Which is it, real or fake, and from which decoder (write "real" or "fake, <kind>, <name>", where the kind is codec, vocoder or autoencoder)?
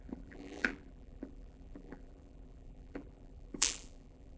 fake, vocoder, BigVGAN v2